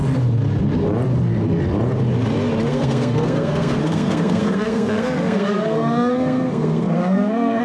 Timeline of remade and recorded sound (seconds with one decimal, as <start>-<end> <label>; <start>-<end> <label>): 0.0-2.7 recorded; 2.7-7.6 remade